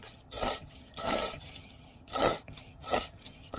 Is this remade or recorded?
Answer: remade